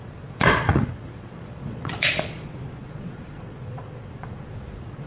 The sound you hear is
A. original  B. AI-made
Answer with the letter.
B